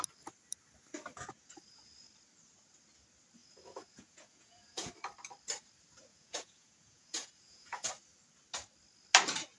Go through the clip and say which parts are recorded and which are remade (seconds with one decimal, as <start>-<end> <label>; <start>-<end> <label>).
0.0-3.4 recorded; 3.4-4.9 remade; 4.9-6.1 recorded; 6.1-7.9 remade; 7.9-9.6 recorded